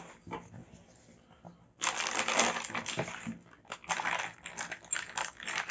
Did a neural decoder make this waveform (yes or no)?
no